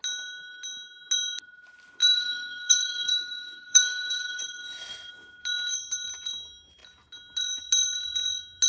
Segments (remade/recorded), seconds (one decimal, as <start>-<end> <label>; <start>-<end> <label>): 0.0-2.0 recorded; 2.0-5.1 remade; 5.1-8.7 recorded